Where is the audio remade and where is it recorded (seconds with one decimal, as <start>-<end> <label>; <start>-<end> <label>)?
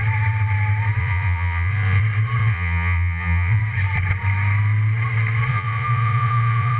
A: 0.0-1.0 recorded; 1.0-2.0 remade; 2.0-2.4 recorded; 2.4-3.6 remade; 3.6-5.5 recorded; 5.5-6.8 remade